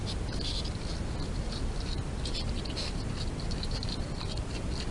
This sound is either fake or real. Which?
real